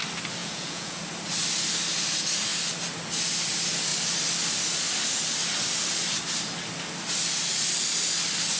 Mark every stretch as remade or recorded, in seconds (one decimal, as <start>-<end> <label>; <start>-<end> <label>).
0.0-0.4 recorded; 0.4-1.0 remade; 1.0-8.6 recorded